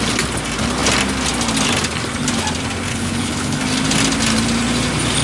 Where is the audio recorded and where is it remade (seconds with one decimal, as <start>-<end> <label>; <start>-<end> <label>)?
0.0-2.9 recorded; 2.9-3.6 remade; 3.6-5.2 recorded